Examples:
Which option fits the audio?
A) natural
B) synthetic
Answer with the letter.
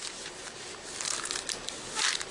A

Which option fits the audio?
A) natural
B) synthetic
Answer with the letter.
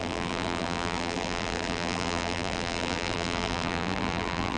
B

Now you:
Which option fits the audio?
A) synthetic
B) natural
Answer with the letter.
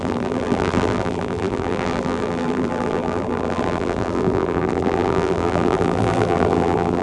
A